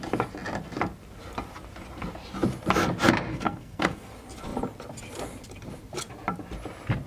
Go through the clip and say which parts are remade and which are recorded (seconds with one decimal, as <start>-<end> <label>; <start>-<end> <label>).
0.0-3.3 recorded; 3.3-4.1 remade; 4.1-7.1 recorded